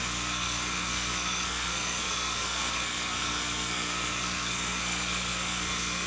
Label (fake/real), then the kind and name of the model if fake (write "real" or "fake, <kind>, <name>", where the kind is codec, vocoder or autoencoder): fake, codec, SNAC